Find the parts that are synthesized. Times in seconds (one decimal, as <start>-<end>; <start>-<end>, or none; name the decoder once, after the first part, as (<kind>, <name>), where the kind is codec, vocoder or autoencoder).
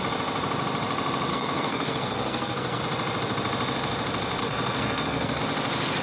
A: 1.3-2.8 (codec, SNAC); 4.4-5.4